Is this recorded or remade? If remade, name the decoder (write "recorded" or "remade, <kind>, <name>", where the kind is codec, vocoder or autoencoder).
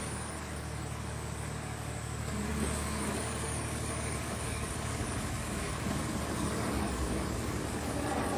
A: remade, codec, DAC